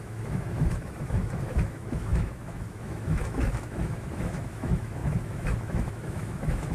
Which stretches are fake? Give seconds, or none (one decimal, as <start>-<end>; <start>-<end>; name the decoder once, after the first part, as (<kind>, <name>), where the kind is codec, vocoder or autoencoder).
0.0-6.7 (autoencoder, DAC-VAE)